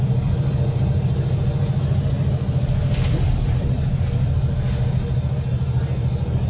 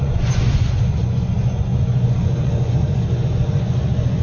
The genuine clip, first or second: first